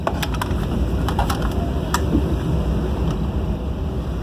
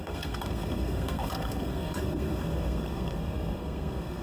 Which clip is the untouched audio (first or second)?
first